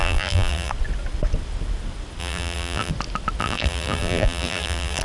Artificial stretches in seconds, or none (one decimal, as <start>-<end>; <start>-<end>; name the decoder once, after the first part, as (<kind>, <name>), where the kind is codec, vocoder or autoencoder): 0.0-0.7 (vocoder, BigVGAN v2); 2.2-2.9; 3.4-5.0